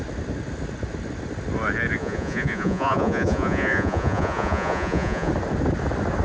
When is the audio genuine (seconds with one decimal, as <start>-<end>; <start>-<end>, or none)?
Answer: 0.0-2.0; 5.3-6.2